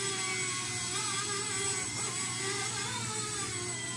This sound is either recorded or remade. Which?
recorded